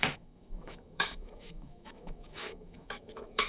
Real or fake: fake